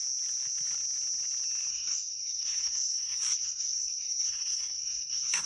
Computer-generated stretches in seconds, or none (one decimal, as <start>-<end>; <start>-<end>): 1.7-5.5